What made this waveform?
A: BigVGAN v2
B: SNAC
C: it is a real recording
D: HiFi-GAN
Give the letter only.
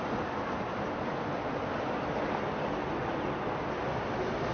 C